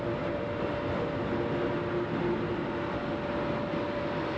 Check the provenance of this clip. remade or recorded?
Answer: recorded